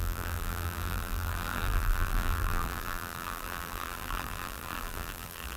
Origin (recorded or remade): remade